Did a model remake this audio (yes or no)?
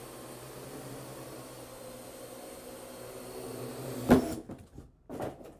no